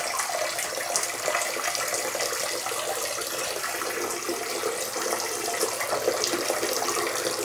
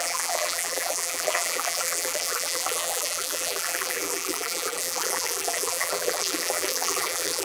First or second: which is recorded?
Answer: first